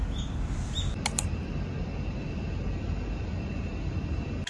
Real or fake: real